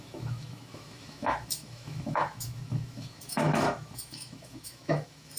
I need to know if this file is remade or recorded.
remade